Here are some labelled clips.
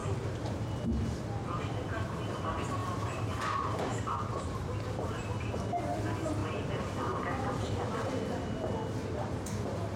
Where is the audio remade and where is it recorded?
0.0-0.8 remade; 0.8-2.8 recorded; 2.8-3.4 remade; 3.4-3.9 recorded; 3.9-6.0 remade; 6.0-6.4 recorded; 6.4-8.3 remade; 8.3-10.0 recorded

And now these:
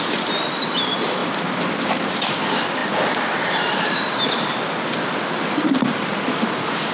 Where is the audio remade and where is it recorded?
0.0-6.9 remade

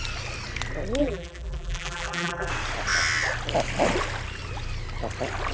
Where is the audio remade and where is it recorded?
0.0-1.0 recorded; 1.0-2.5 remade; 2.5-5.5 recorded

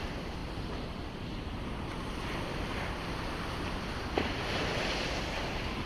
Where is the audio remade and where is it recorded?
0.0-0.4 recorded; 0.4-1.8 remade; 1.8-5.9 recorded

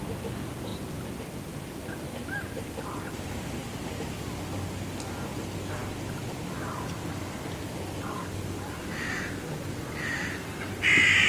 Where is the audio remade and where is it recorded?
0.0-11.3 remade